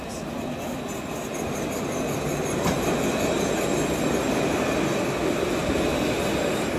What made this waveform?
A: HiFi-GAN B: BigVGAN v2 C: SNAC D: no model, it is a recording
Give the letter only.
D